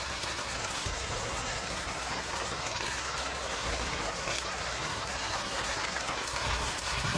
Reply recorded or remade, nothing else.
remade